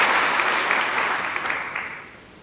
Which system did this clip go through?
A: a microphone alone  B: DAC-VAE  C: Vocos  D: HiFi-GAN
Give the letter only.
A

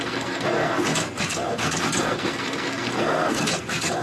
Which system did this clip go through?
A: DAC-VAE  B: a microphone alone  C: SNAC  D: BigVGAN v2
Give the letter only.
C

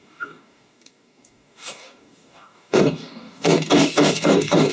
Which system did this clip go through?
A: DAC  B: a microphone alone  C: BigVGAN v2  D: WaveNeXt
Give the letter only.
A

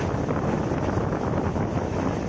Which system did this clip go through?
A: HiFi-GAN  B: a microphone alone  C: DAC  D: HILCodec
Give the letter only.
B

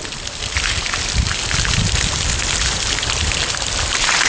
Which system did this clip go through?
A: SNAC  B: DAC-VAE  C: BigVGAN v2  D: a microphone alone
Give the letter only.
C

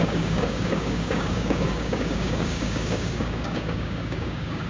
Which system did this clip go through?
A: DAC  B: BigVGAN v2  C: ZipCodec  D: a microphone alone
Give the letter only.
A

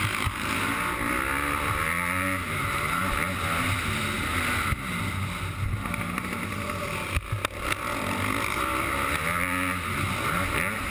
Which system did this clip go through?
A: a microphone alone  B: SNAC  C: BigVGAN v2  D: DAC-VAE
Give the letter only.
A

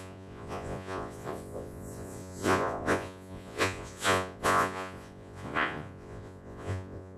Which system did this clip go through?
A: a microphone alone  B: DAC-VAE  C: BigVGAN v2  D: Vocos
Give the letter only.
D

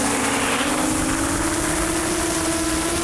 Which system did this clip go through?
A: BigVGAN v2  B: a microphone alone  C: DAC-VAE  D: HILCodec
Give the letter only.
B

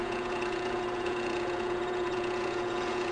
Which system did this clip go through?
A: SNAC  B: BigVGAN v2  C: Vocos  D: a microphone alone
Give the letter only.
C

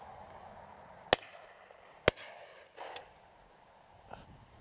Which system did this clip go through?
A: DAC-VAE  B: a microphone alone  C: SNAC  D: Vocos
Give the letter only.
B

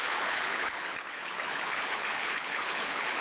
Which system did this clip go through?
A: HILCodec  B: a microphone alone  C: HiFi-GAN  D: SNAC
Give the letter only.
A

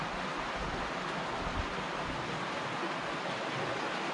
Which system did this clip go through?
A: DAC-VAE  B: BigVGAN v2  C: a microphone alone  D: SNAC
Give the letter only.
C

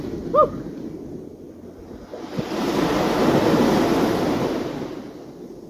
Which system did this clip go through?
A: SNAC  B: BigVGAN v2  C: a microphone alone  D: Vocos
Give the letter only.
C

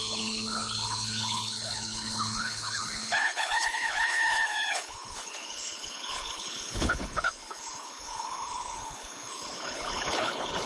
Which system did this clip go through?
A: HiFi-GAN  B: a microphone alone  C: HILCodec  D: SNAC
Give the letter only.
C